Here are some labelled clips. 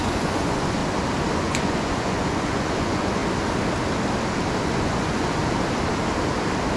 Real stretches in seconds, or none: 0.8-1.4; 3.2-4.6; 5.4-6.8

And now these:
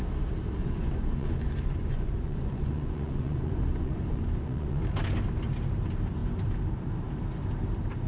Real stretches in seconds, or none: 0.0-0.6; 4.8-8.1

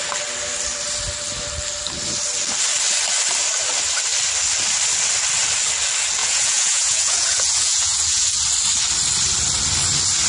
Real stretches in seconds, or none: 0.0-6.2; 8.3-10.3

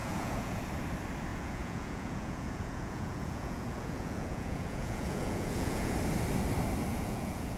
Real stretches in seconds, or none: 0.6-1.3; 5.9-6.9